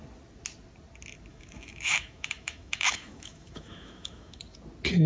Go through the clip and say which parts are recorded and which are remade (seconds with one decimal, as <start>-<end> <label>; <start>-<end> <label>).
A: 0.0-1.3 recorded; 1.3-4.4 remade; 4.4-5.1 recorded

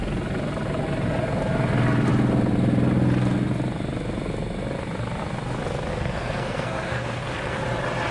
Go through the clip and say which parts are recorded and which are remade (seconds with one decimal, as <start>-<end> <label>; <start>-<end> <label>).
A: 0.0-5.9 recorded; 5.9-7.6 remade; 7.6-8.1 recorded

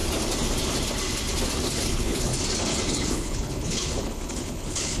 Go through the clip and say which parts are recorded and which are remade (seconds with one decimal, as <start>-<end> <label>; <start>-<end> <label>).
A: 0.0-1.9 recorded; 1.9-2.3 remade; 2.3-2.9 recorded; 2.9-5.0 remade

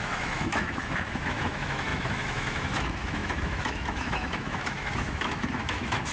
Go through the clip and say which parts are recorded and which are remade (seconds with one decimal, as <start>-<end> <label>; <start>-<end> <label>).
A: 0.0-6.1 remade

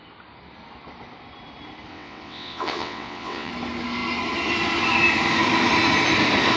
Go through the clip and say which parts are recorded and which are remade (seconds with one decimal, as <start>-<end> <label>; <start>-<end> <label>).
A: 0.0-1.9 recorded; 1.9-3.5 remade; 3.5-6.6 recorded

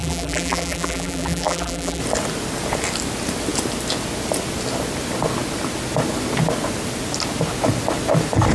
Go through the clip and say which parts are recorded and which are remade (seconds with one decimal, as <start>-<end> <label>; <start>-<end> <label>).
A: 0.0-2.0 remade; 2.0-8.5 recorded

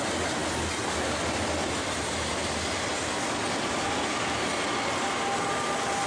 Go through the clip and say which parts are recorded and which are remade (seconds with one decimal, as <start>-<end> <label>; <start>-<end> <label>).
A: 0.0-6.1 recorded